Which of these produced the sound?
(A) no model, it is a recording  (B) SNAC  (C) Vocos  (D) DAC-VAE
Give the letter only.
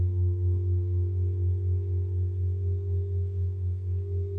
B